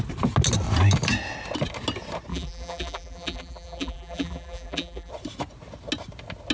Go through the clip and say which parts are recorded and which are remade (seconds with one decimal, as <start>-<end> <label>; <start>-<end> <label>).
0.0-2.3 recorded; 2.3-5.1 remade; 5.1-6.5 recorded